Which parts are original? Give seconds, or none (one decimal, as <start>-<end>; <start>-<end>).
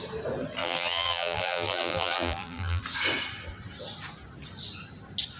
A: 0.0-0.6; 2.8-5.4